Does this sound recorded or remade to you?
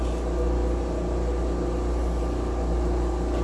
recorded